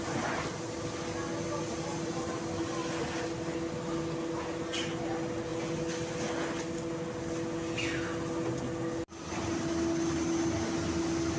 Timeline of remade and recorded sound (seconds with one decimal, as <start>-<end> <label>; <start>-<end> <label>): 0.0-11.4 recorded